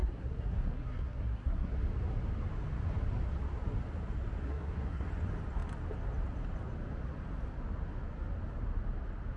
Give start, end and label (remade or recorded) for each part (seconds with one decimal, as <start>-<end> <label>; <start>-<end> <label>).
0.0-1.7 remade; 1.7-4.4 recorded; 4.4-5.1 remade; 5.1-9.4 recorded

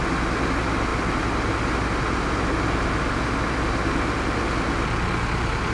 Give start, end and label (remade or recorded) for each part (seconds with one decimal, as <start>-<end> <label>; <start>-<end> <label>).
0.0-5.7 recorded

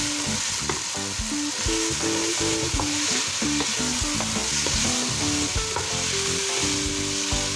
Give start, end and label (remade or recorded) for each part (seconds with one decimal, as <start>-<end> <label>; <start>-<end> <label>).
0.0-2.2 recorded; 2.2-3.2 remade; 3.2-7.6 recorded

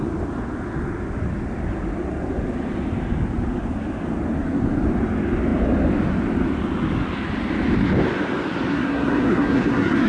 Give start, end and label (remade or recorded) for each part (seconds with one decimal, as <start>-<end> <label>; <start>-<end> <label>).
0.0-8.7 recorded; 8.7-10.1 remade

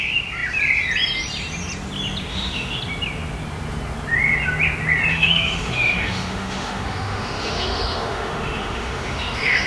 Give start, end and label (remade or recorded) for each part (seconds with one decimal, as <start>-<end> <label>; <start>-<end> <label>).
0.0-2.3 recorded; 2.3-2.8 remade; 2.8-5.1 recorded; 5.1-9.7 remade